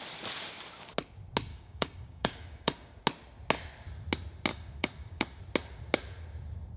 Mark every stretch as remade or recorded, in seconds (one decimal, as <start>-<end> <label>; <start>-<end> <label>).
0.0-1.5 recorded; 1.5-3.0 remade; 3.0-4.5 recorded; 4.5-5.4 remade; 5.4-6.8 recorded